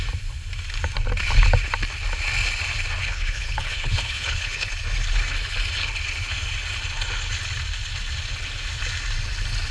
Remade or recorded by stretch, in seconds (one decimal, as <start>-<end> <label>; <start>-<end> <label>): 0.0-3.0 recorded; 3.0-4.7 remade; 4.7-9.7 recorded

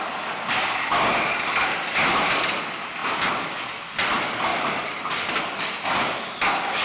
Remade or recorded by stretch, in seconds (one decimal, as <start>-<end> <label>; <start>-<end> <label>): 0.0-4.5 recorded; 4.5-5.3 remade; 5.3-6.8 recorded

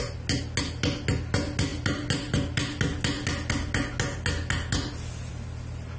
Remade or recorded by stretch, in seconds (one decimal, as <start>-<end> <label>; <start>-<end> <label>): 0.0-6.0 recorded